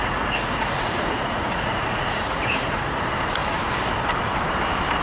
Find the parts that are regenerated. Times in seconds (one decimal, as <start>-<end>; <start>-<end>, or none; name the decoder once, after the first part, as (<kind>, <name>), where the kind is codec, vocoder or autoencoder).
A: 0.0-3.0 (vocoder, Vocos)